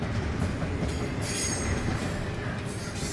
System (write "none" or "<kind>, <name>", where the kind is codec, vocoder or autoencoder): none